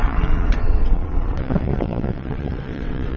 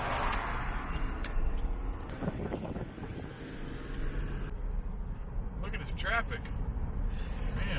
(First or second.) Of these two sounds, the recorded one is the second